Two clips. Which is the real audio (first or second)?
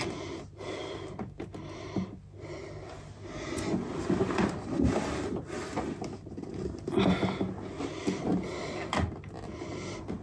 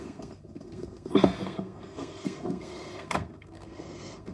first